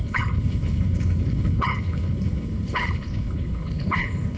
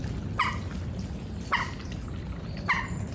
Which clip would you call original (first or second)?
second